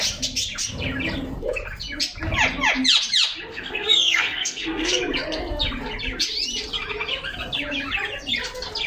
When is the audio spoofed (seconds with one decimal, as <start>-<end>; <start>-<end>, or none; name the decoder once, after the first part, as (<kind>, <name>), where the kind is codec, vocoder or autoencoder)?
3.5-5.0 (codec, SNAC)